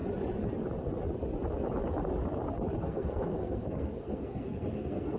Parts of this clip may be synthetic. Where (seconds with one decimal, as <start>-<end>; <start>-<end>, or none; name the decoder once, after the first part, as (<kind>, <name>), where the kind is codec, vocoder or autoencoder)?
2.8-5.2 (codec, SNAC)